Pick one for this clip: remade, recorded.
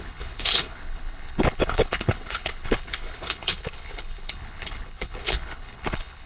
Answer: remade